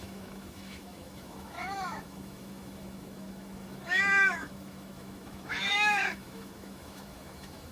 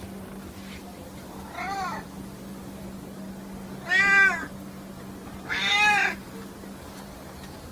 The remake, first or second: first